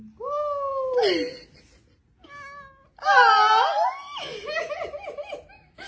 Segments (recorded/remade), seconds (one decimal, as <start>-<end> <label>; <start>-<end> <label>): 0.0-5.9 recorded